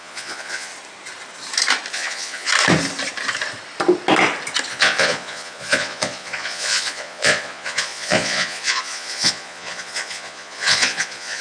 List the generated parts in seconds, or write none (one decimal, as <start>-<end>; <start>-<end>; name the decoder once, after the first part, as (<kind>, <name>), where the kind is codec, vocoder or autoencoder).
0.0-0.7 (vocoder, Vocos); 1.9-2.5; 4.7-11.4